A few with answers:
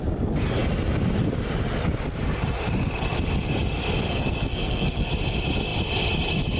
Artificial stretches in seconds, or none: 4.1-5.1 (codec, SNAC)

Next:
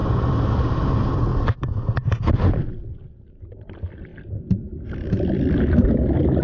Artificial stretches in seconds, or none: none

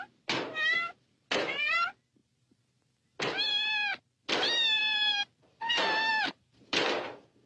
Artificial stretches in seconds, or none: 4.8-5.6 (vocoder, BigVGAN v2); 6.1-6.8